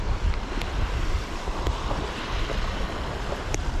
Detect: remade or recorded recorded